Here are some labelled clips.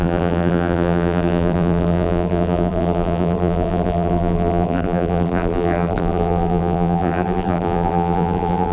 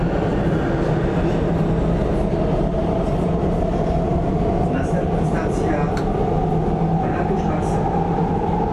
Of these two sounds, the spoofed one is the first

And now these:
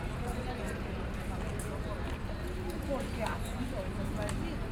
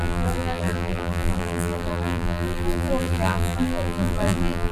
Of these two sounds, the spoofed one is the second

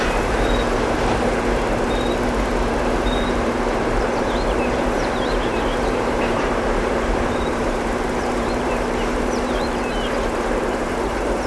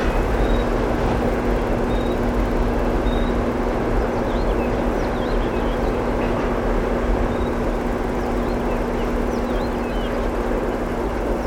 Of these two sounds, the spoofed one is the first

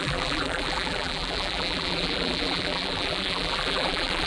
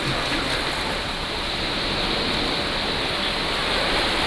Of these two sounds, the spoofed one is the first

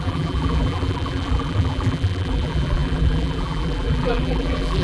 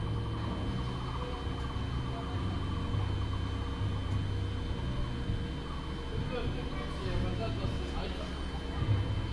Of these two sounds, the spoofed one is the first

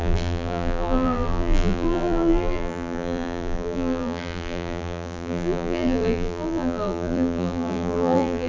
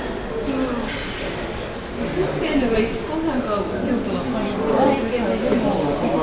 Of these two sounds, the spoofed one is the first